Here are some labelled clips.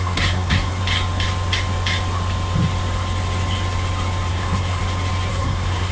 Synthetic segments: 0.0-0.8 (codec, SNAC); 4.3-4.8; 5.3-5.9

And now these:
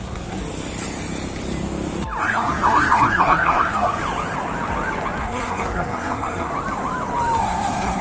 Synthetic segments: 0.0-0.4 (codec, SNAC); 2.2-4.0; 5.2-6.5; 7.4-8.0

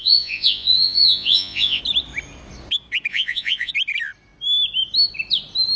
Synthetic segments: 0.0-1.8 (vocoder, Vocos); 3.1-3.7

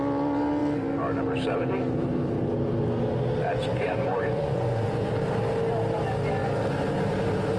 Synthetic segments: 3.7-5.1 (vocoder, Vocos)

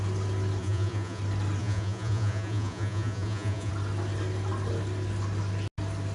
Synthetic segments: 0.6-1.2 (vocoder, Vocos); 1.6-3.7

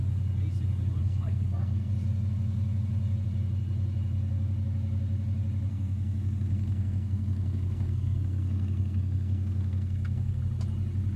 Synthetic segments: 1.0-1.9 (codec, SNAC); 5.7-10.4

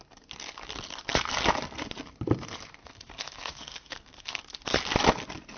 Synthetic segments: 2.8-4.4 (codec, SNAC)